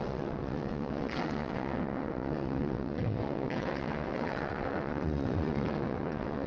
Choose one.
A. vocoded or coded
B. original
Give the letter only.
A